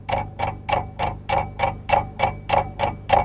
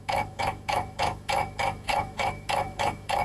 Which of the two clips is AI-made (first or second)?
second